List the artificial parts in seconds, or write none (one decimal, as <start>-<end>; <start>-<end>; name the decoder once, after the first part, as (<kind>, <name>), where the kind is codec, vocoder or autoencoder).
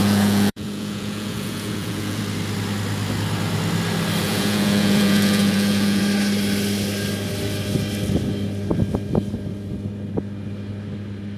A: 0.0-2.2 (vocoder, Vocos); 4.2-6.0